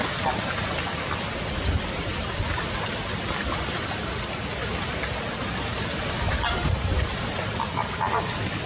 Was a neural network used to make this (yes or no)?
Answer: no